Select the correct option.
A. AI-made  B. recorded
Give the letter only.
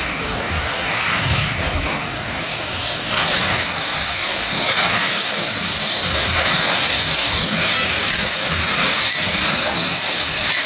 A